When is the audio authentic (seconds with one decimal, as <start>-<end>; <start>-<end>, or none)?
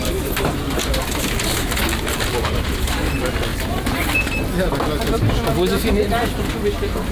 0.0-3.5; 4.1-7.1